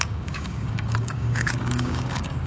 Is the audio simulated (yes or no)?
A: yes